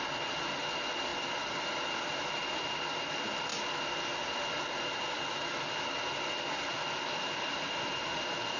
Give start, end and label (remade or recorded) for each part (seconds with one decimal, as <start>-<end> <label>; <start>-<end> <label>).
0.0-1.1 recorded; 1.1-2.3 remade; 2.3-8.6 recorded